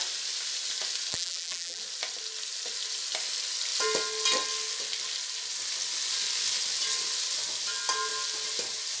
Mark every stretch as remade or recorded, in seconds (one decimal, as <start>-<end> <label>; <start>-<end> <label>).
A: 0.0-1.1 recorded; 1.1-1.8 remade; 1.8-9.0 recorded